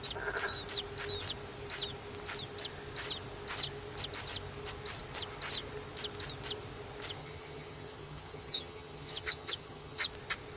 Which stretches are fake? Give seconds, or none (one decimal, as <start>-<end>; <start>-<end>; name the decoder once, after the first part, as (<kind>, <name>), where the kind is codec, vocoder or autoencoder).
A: 7.2-10.1 (vocoder, HiFi-GAN)